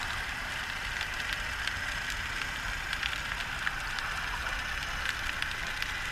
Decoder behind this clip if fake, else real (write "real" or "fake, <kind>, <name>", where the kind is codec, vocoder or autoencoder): real